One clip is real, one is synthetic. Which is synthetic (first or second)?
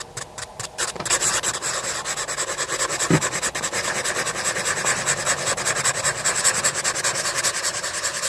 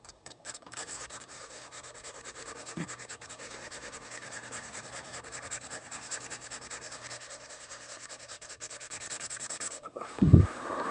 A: second